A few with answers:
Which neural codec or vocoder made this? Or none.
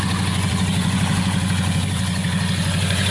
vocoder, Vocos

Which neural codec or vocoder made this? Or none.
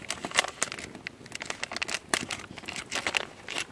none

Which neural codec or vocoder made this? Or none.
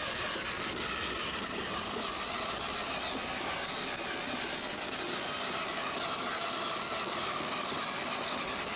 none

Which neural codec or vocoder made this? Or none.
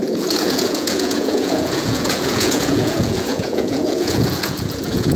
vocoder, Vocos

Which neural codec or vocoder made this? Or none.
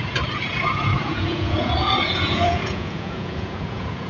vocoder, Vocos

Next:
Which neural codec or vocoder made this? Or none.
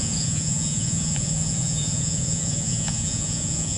vocoder, Vocos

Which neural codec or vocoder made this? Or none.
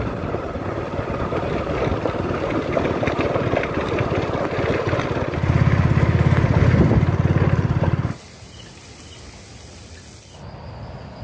none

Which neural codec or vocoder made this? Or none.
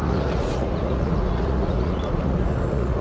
vocoder, Vocos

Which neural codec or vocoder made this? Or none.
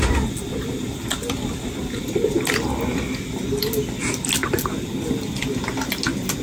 none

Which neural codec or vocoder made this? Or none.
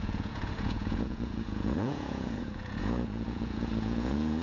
vocoder, Vocos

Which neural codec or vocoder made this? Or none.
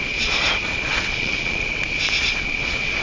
vocoder, Vocos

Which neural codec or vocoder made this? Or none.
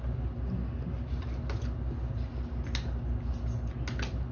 none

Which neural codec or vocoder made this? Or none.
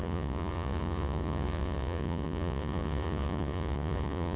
vocoder, Vocos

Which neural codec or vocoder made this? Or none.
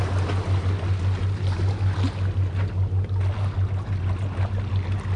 none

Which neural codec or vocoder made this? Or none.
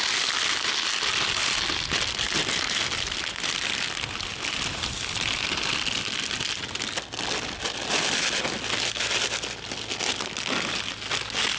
none